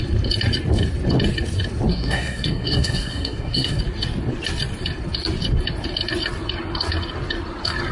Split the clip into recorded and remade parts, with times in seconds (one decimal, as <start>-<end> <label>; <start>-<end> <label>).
0.0-1.9 recorded; 1.9-3.8 remade; 3.8-7.9 recorded